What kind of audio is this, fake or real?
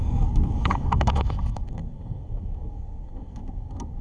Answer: fake